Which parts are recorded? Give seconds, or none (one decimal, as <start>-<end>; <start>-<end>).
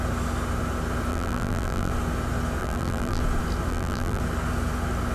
0.0-1.1; 1.9-2.6; 3.2-3.7; 4.2-5.1